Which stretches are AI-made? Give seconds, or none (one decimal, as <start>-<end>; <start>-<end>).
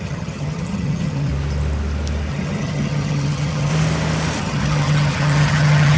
0.0-1.3; 2.3-3.7; 4.4-6.0